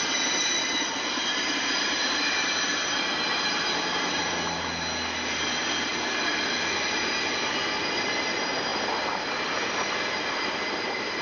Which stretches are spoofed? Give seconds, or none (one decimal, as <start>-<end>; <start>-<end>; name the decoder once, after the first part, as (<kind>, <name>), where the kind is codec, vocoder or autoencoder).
none

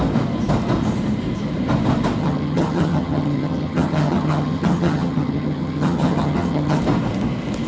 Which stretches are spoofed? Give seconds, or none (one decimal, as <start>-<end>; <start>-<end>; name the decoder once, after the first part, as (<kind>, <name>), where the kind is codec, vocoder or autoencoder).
2.2-6.8 (vocoder, HiFi-GAN)

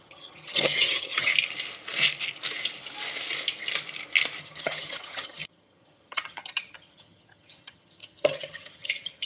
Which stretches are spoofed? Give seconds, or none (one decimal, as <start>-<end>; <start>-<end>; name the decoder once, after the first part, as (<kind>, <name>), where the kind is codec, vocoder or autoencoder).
0.0-1.3 (vocoder, HiFi-GAN); 4.4-9.3

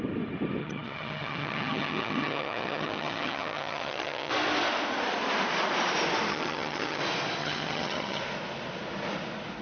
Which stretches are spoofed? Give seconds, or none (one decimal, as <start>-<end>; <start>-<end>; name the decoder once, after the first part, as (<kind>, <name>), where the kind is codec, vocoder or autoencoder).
0.6-4.3 (vocoder, HiFi-GAN); 6.3-7.0; 7.4-8.2

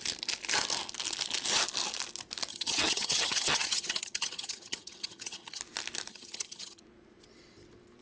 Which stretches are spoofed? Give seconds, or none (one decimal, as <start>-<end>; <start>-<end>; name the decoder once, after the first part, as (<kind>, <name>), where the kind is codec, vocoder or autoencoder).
2.5-5.6 (vocoder, HiFi-GAN); 6.1-6.8

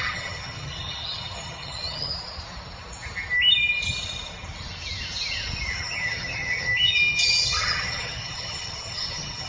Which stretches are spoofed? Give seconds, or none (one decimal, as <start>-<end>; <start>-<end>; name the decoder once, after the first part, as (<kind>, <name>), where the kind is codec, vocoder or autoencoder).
0.0-2.1 (vocoder, HiFi-GAN); 5.7-9.5

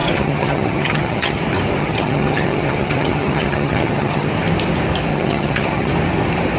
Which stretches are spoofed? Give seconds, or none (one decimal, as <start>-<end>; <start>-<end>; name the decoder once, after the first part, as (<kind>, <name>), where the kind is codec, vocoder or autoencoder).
0.0-1.4 (vocoder, HiFi-GAN); 1.8-4.3; 5.1-5.9